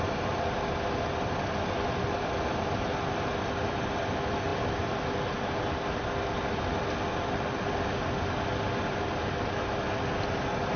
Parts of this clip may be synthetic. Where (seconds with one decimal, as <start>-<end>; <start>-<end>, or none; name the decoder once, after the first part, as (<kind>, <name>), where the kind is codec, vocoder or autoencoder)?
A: none